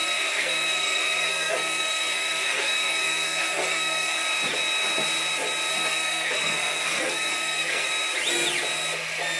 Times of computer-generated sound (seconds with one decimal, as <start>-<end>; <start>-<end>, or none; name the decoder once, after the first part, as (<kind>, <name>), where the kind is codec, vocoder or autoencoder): 0.0-4.3 (codec, SNAC); 5.7-7.9